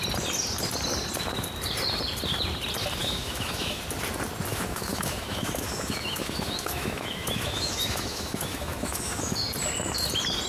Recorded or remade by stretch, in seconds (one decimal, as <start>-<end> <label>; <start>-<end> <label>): 0.0-3.0 recorded; 3.0-3.8 remade; 3.8-4.5 recorded; 4.5-9.3 remade; 9.3-10.5 recorded